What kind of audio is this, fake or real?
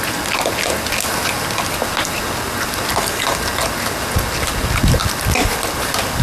real